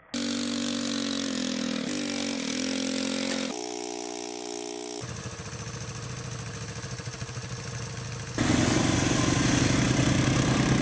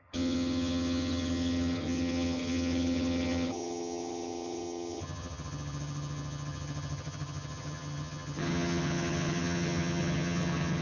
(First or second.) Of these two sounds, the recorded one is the first